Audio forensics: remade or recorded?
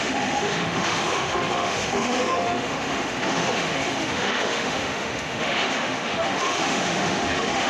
remade